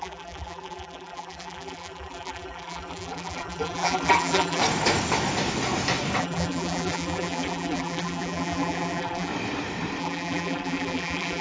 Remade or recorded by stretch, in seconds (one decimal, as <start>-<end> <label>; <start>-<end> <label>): 0.0-4.6 remade; 4.6-6.2 recorded; 6.2-9.3 remade; 9.3-10.0 recorded; 10.0-11.4 remade